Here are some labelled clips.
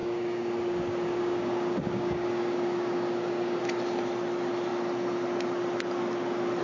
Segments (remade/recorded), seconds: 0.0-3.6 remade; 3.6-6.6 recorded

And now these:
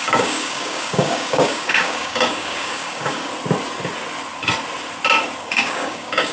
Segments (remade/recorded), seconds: 0.0-3.3 remade; 3.3-5.4 recorded; 5.4-6.3 remade